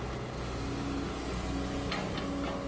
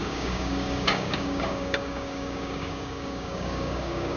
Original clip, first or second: first